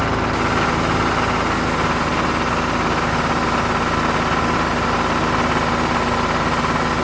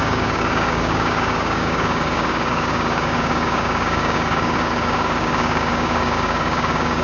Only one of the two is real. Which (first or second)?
first